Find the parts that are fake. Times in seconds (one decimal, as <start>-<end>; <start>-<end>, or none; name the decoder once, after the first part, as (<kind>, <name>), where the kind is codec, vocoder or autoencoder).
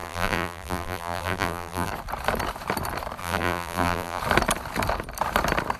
0.0-1.9 (vocoder, BigVGAN v2); 3.2-4.2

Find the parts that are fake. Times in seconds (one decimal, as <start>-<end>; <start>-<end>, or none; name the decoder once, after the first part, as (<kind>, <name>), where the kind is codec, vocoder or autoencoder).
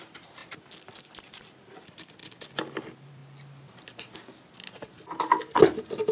0.0-0.4 (vocoder, BigVGAN v2); 1.1-2.2; 2.8-3.2; 5.4-6.1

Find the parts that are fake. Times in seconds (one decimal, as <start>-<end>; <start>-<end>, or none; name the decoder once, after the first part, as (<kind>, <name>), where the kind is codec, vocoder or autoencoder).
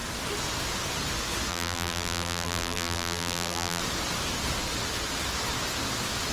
1.5-3.8 (vocoder, BigVGAN v2)